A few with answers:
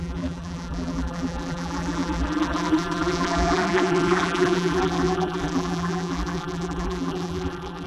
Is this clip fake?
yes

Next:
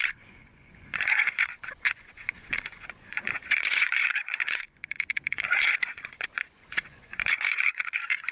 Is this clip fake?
yes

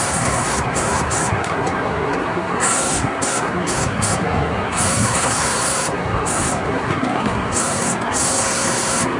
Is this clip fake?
yes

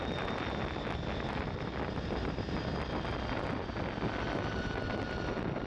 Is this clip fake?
no